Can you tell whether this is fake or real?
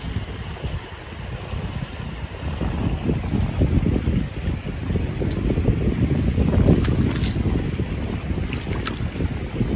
real